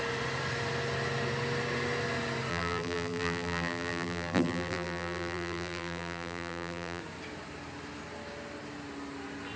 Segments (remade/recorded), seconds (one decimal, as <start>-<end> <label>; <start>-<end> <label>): 0.0-2.5 recorded; 2.5-7.0 remade; 7.0-9.6 recorded